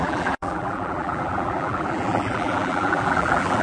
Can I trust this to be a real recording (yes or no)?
no